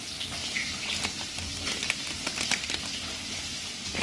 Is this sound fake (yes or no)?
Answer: no